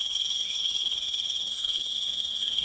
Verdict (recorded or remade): remade